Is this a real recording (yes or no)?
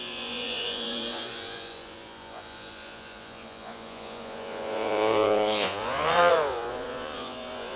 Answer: no